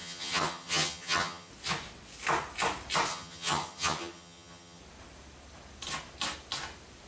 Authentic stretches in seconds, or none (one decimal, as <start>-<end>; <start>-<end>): 1.5-3.1; 4.8-7.1